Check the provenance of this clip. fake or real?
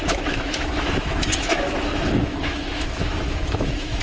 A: fake